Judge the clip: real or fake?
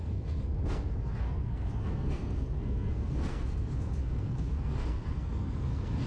fake